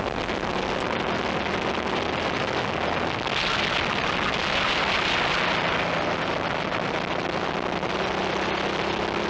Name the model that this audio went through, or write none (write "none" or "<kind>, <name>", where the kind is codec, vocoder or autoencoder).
none